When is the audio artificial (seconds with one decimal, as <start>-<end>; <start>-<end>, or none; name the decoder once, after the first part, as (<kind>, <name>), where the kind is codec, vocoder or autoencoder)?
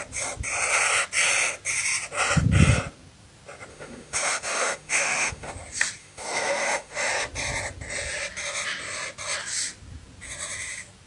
3.7-5.5 (autoencoder, DAC-VAE); 6.0-7.1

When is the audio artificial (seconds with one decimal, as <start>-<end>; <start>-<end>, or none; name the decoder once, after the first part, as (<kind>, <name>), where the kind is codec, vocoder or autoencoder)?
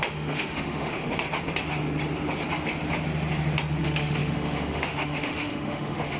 0.0-1.1 (autoencoder, DAC-VAE); 3.8-6.2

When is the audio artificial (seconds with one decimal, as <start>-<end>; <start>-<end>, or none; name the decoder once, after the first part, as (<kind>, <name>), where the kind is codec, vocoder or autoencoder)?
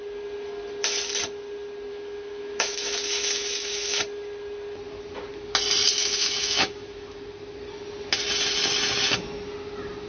1.9-4.0 (autoencoder, DAC-VAE); 6.0-7.2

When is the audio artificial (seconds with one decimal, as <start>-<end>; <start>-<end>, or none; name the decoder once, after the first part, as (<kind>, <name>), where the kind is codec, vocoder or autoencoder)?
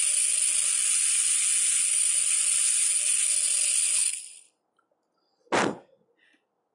none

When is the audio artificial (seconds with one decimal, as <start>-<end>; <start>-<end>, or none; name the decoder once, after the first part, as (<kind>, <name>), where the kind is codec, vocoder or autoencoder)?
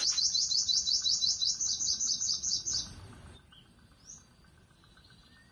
none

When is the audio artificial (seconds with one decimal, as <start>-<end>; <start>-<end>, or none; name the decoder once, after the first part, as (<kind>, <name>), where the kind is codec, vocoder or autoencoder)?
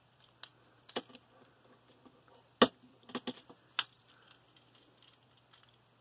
none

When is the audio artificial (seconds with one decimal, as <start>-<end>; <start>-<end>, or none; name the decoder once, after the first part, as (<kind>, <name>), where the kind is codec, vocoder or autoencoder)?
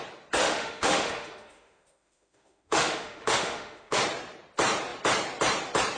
0.4-4.0 (autoencoder, DAC-VAE)